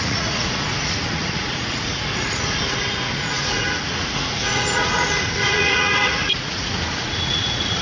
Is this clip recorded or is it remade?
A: remade